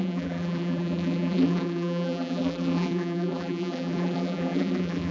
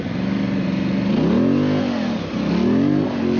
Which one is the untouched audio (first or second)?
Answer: second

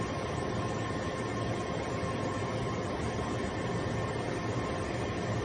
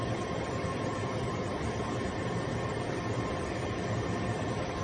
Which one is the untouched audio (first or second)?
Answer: first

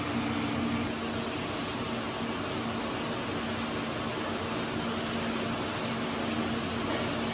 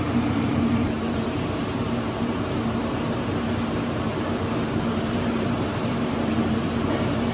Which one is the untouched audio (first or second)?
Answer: first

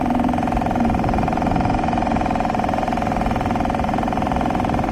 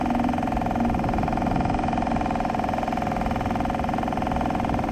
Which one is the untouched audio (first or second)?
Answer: second